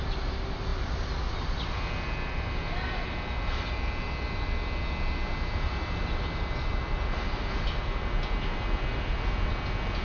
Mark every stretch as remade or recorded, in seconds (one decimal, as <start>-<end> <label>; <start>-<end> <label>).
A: 0.0-10.0 recorded